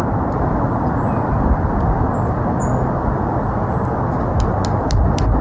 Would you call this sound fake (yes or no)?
no